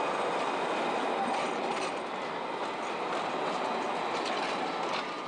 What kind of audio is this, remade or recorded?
recorded